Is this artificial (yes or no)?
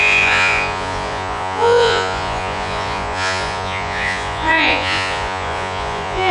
yes